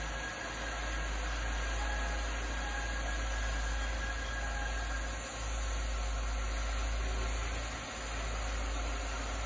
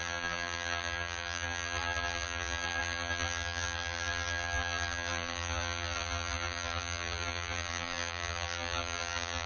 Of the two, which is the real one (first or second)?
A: first